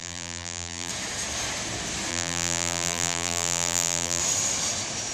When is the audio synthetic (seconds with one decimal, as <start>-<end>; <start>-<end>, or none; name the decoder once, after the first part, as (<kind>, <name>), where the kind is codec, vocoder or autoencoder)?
0.0-0.9 (vocoder, BigVGAN v2); 2.1-4.2